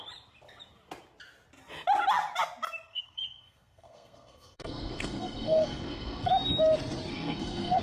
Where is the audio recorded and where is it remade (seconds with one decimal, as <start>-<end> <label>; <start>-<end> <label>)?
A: 0.0-2.9 recorded; 2.9-6.3 remade; 6.3-7.1 recorded; 7.1-7.8 remade